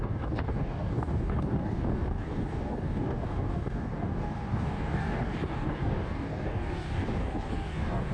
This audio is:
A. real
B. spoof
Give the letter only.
B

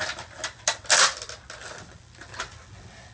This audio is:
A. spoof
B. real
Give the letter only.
B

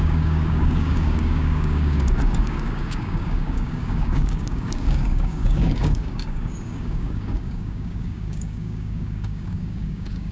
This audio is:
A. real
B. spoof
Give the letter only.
B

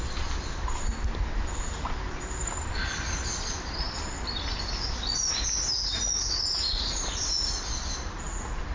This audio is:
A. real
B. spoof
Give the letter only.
A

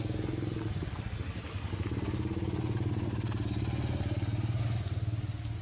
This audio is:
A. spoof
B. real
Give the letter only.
B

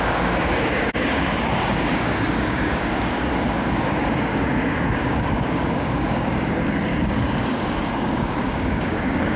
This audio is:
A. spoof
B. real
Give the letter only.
A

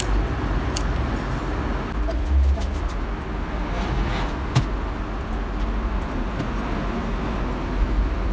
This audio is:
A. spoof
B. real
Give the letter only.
B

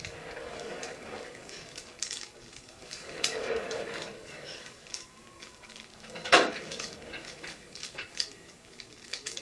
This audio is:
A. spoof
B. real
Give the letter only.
A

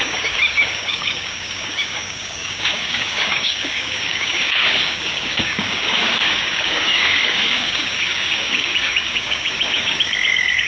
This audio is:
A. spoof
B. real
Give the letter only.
A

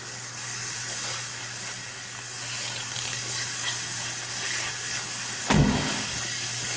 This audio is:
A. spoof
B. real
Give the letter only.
A